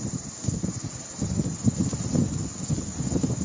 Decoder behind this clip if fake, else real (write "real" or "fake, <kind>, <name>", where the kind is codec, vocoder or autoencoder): real